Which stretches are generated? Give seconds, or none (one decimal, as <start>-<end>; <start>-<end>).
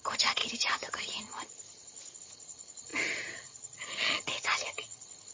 0.0-5.3